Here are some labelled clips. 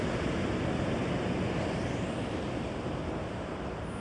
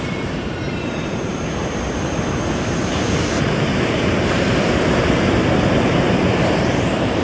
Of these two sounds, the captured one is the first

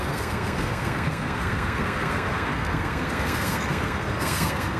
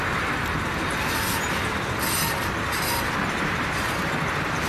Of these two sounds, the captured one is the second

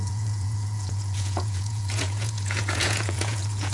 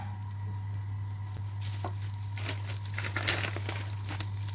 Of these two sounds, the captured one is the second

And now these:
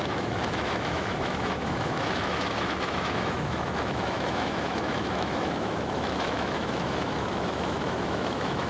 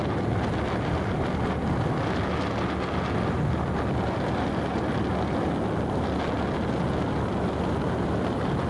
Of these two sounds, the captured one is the second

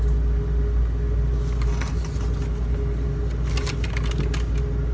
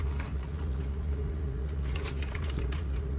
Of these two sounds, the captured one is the first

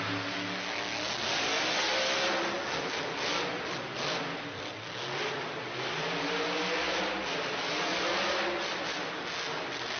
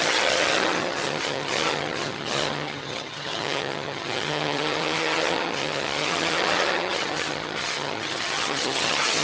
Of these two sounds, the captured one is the first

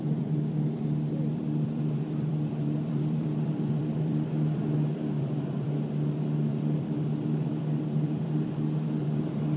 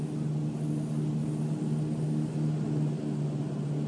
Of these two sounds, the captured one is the second